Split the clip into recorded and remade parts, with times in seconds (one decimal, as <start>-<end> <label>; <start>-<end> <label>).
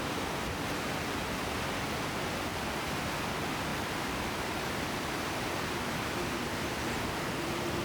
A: 0.0-3.7 recorded; 3.7-5.9 remade; 5.9-7.8 recorded